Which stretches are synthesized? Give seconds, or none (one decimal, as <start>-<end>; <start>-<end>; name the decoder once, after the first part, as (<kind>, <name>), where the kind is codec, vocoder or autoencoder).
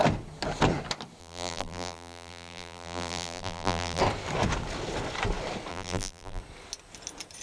1.2-4.0 (vocoder, BigVGAN v2); 5.7-6.4